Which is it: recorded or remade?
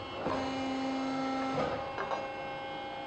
recorded